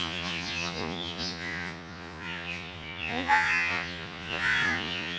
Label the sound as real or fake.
fake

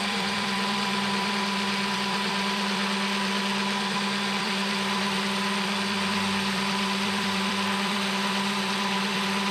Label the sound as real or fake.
fake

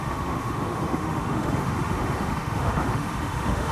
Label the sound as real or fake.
fake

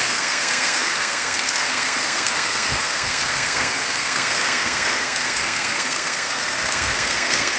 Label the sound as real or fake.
fake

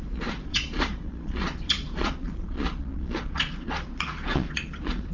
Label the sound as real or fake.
fake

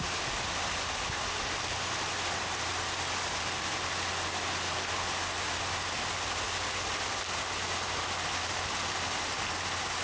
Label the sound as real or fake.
real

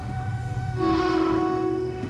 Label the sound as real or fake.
fake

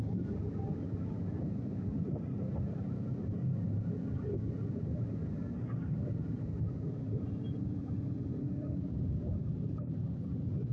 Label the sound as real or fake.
real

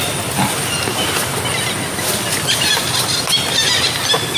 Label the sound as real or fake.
real